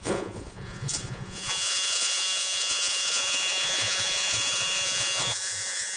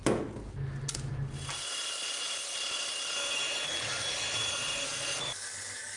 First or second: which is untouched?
second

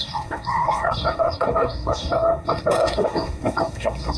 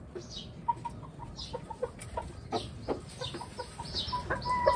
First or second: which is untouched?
second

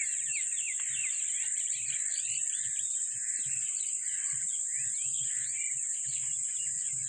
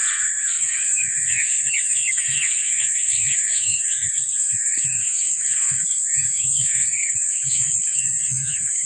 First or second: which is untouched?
first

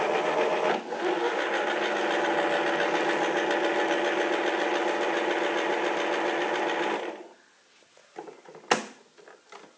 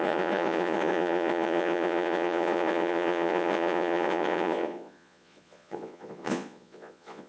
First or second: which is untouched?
first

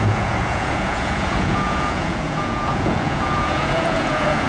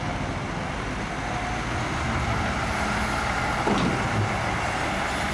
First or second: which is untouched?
second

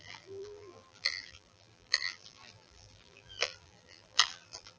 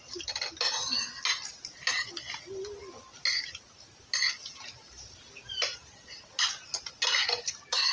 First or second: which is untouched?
second